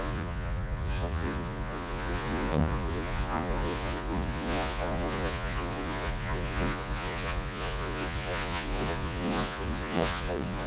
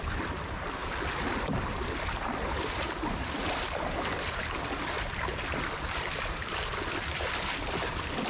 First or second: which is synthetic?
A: first